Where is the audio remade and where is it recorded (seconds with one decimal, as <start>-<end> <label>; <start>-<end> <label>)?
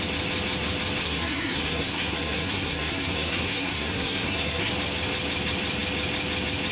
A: 0.0-1.0 recorded; 1.0-4.7 remade; 4.7-6.7 recorded